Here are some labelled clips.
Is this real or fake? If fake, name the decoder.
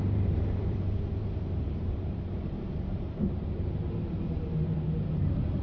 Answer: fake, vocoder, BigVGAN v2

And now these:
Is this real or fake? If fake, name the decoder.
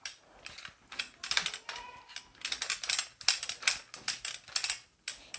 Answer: real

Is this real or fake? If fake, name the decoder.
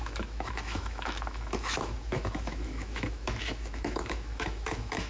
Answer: fake, autoencoder, DAC-VAE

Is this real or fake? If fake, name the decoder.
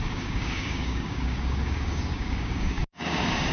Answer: fake, codec, DAC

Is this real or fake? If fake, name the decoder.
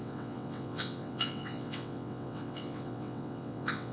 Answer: fake, vocoder, WaveNeXt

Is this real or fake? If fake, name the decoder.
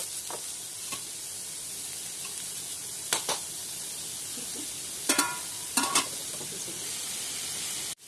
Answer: real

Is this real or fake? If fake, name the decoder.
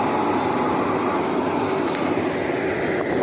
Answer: real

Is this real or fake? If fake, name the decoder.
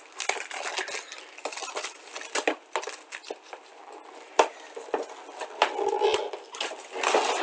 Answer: real